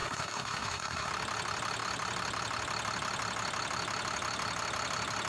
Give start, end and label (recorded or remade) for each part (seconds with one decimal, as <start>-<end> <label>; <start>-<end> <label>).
0.0-1.1 remade; 1.1-5.3 recorded